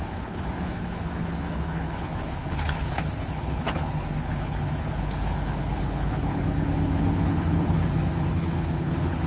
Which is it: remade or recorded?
remade